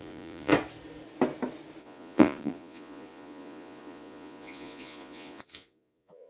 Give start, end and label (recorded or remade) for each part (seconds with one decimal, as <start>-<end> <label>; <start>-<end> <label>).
0.0-0.5 remade; 0.5-1.8 recorded; 1.8-6.3 remade